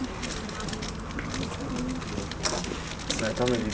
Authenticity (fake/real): real